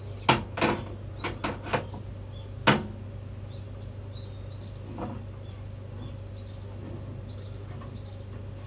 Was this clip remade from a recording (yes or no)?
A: no